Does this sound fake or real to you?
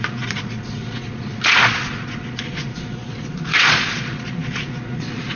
fake